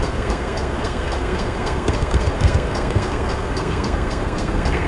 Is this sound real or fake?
fake